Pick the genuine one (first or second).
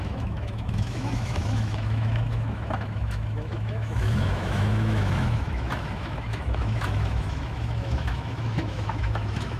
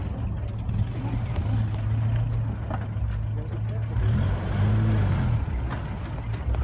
second